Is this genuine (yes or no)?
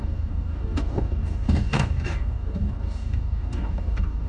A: no